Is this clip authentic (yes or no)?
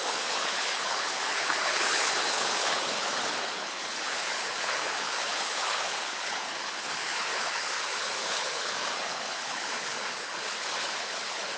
no